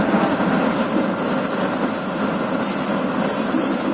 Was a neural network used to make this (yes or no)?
no